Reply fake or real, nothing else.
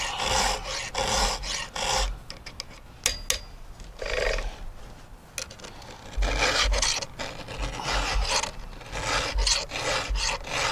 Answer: real